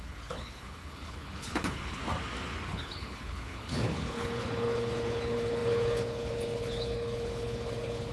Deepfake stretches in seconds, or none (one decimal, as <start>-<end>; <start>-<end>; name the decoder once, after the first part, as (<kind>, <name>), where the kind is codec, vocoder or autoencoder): 0.0-2.0 (codec, HILCodec); 2.7-8.1